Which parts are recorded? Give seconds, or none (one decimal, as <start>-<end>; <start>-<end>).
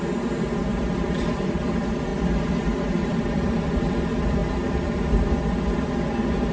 0.0-0.7; 1.7-2.1; 3.5-6.5